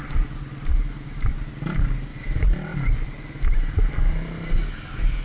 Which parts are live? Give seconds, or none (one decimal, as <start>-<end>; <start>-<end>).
0.0-0.7; 1.3-2.1; 4.6-5.2